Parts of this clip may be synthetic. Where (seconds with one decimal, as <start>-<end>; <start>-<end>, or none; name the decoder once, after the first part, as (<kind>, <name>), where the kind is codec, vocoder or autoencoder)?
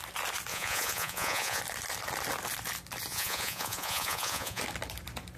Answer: 0.5-1.6 (vocoder, Vocos); 3.1-4.6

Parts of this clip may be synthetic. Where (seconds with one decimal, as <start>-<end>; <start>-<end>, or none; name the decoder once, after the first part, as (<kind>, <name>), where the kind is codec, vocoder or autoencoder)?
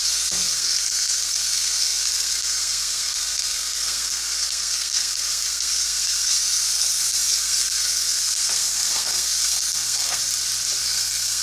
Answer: 0.0-10.2 (codec, SNAC); 10.8-11.4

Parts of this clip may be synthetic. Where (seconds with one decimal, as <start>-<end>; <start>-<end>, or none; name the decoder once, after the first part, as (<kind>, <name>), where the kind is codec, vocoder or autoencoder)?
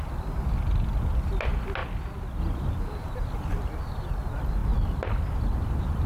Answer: 4.6-6.1 (vocoder, BigVGAN v2)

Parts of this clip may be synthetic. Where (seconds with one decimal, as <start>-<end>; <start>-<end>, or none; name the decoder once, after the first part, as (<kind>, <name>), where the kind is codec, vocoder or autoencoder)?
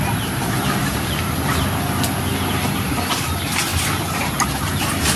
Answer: 0.8-1.5 (vocoder, BigVGAN v2); 3.7-4.8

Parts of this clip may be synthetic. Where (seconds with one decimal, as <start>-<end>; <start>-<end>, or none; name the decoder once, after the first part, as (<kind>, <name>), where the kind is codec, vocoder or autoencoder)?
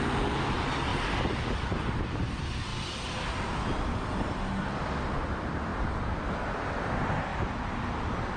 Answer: 0.0-0.9 (vocoder, BigVGAN v2); 1.5-2.7; 5.1-8.4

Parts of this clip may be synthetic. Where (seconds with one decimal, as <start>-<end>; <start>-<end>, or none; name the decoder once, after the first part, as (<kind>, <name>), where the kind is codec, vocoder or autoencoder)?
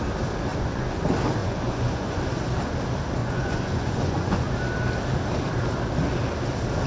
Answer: 0.5-1.0 (vocoder, Vocos); 1.4-2.2; 3.2-4.5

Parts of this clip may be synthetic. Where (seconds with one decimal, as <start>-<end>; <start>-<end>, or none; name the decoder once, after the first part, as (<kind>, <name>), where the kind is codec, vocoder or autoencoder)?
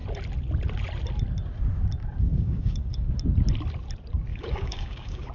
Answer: 2.3-3.1 (codec, DAC); 4.3-5.3